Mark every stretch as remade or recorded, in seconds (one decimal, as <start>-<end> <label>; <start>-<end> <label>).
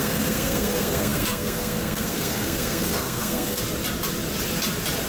0.0-3.6 remade; 3.6-5.1 recorded